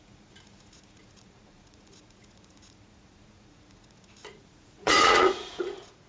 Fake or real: fake